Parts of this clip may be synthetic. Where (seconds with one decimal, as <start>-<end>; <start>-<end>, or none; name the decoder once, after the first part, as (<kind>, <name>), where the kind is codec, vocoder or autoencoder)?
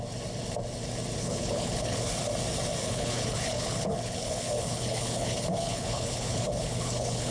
1.2-2.1 (codec, HILCodec); 2.8-7.3